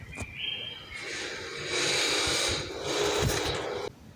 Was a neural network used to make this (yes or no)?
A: no